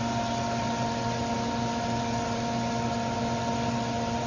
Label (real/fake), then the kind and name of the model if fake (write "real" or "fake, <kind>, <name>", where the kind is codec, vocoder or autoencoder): real